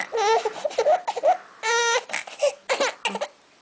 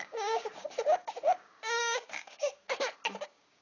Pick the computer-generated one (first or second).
second